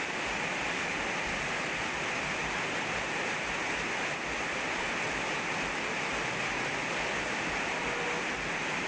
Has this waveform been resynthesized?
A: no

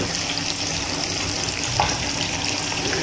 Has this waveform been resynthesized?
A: yes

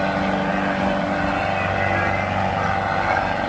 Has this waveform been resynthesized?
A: no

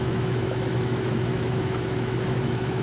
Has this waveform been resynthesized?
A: yes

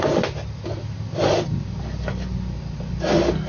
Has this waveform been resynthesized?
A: no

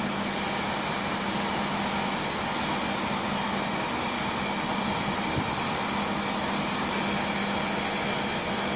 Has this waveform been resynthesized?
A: no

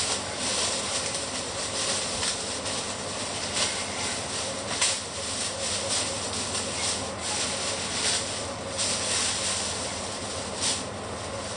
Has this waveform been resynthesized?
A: no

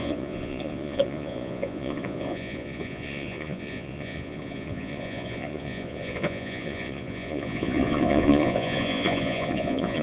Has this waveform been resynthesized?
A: yes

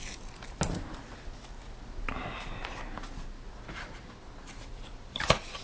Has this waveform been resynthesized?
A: no